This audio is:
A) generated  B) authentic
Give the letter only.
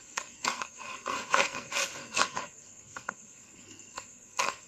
A